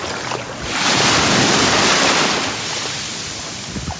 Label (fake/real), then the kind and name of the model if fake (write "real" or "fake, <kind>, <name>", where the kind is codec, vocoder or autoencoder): fake, vocoder, BigVGAN v2